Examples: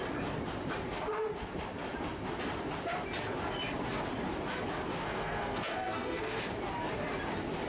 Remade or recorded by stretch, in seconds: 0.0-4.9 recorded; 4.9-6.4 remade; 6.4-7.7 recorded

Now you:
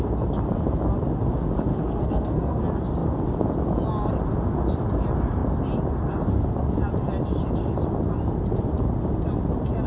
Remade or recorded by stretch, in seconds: 0.0-1.7 recorded; 1.7-2.6 remade; 2.6-9.9 recorded

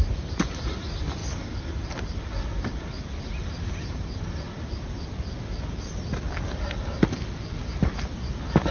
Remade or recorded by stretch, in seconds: 0.0-8.7 recorded

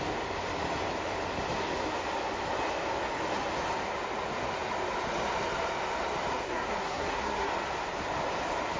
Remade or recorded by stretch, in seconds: 0.0-6.3 recorded; 6.3-7.5 remade; 7.5-8.8 recorded